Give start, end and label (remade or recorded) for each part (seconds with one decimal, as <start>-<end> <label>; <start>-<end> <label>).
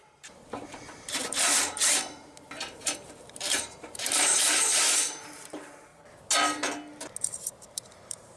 0.0-1.8 remade; 1.8-2.6 recorded; 2.6-5.9 remade; 5.9-7.2 recorded; 7.2-8.4 remade